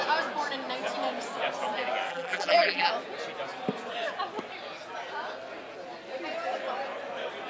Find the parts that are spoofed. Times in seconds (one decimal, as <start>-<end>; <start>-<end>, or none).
2.1-2.9